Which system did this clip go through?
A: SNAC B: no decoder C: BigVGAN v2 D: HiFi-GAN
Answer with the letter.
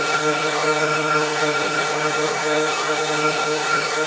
A